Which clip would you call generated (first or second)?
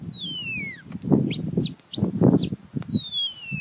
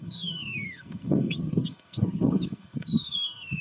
second